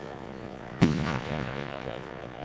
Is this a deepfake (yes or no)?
yes